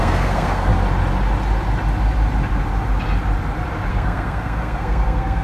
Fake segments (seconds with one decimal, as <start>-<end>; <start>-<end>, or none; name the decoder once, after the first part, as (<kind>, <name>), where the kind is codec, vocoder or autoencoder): 0.0-0.7 (codec, SNAC); 3.9-5.4